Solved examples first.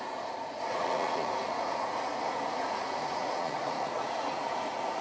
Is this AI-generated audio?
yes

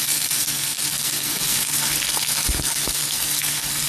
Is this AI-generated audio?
yes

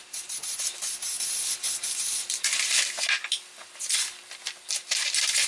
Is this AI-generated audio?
no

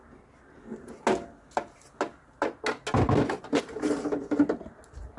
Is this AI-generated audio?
no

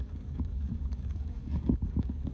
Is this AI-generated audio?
yes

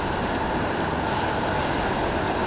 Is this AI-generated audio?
no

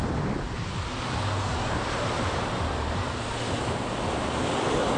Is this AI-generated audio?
no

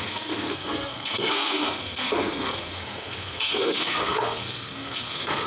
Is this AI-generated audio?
yes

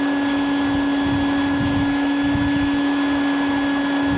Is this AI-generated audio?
no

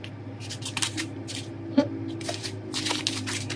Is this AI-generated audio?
no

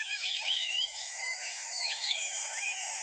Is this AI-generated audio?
yes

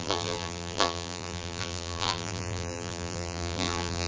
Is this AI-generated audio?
yes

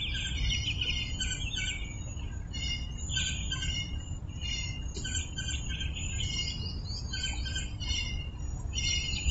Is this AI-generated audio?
no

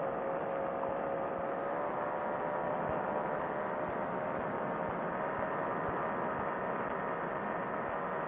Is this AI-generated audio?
no